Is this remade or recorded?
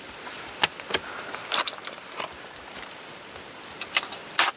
recorded